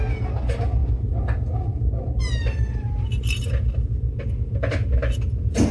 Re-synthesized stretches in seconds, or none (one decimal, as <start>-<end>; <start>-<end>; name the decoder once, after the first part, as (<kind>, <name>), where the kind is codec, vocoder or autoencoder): none